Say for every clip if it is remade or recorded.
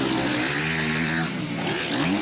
recorded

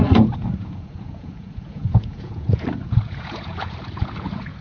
remade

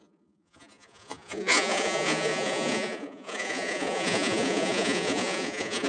remade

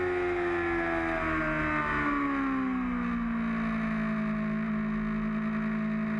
recorded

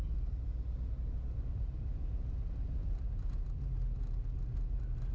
recorded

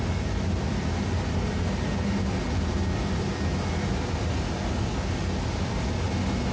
recorded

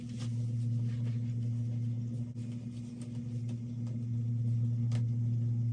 recorded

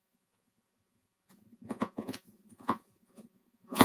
remade